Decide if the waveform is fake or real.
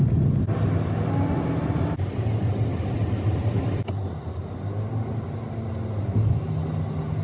real